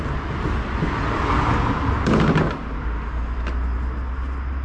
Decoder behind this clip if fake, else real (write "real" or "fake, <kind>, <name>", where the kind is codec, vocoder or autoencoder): real